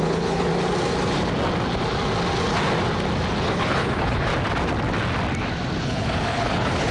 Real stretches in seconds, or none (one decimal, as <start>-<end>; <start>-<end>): 0.5-3.4; 4.3-5.8